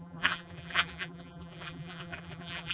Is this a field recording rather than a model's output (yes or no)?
no